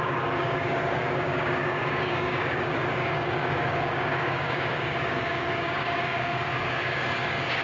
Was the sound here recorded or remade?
remade